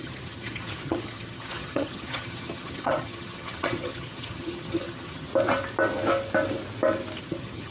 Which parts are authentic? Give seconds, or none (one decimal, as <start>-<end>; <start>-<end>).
5.3-7.2